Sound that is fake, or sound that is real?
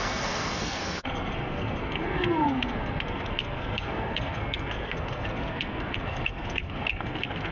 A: fake